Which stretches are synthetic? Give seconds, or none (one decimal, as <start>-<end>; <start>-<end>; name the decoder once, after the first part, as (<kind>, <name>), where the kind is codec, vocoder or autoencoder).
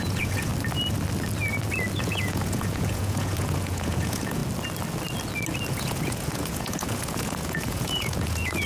0.0-0.5 (vocoder, Vocos); 2.0-4.4; 5.7-8.7